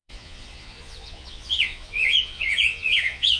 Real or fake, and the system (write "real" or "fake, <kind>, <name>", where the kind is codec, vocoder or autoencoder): fake, vocoder, Vocos